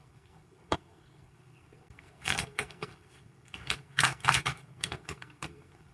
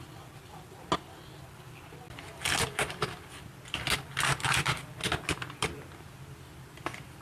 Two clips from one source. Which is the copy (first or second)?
first